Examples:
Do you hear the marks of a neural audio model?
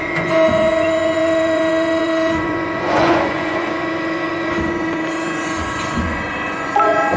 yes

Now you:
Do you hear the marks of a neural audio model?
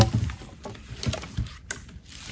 no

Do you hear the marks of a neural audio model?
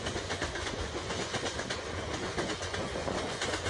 yes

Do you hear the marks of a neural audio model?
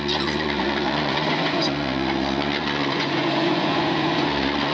yes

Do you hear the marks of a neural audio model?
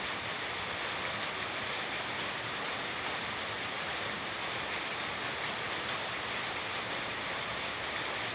no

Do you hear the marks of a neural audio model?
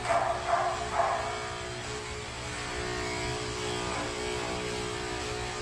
no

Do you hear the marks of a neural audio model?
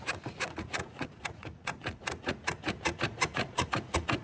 yes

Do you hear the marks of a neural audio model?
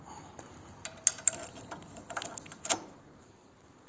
no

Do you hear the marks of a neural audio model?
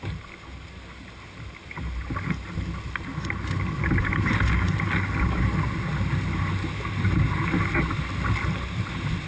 no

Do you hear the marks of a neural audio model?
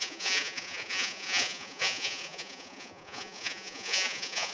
yes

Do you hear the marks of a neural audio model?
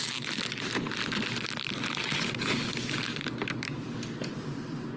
no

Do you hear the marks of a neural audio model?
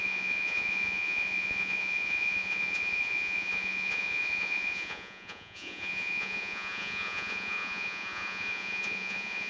yes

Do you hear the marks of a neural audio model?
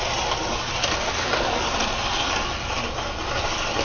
no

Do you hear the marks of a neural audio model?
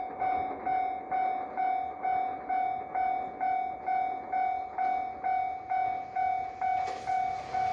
no